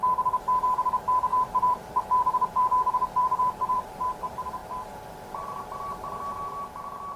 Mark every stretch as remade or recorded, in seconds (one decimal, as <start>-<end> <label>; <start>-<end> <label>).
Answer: 0.0-1.3 recorded; 1.3-4.0 remade; 4.0-7.2 recorded